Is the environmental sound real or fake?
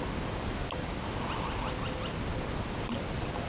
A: real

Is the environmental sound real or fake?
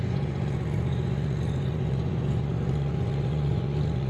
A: fake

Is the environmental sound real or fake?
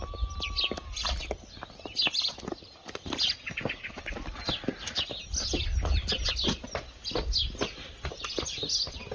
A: real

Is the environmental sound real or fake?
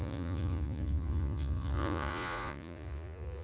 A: fake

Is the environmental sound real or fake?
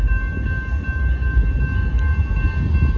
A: real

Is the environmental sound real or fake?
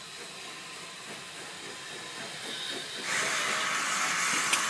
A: real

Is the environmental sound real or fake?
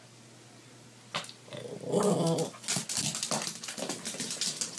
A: real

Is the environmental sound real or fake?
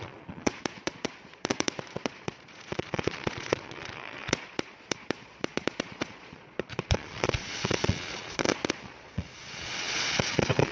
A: fake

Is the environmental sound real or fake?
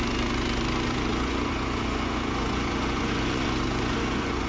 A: fake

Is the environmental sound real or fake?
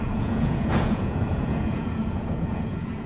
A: fake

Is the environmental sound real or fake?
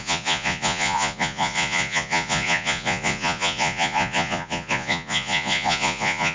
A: fake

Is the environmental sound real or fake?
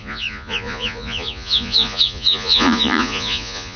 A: fake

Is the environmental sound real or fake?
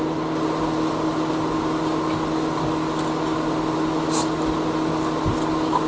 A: real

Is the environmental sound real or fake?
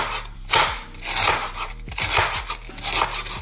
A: real